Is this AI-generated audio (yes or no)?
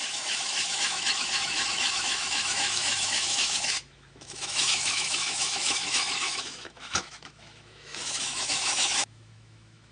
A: yes